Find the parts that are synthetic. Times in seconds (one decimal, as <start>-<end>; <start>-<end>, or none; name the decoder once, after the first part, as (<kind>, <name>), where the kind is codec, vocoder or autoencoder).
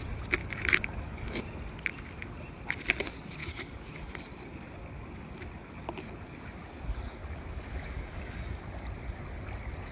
0.4-1.4 (codec, DAC); 3.4-3.9; 7.7-8.6